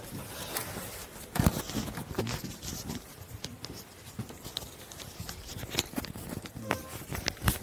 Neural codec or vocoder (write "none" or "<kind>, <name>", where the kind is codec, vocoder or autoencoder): none